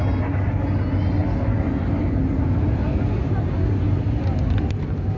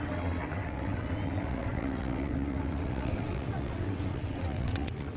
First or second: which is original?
first